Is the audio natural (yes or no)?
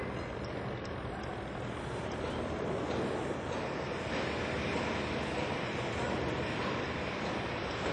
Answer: yes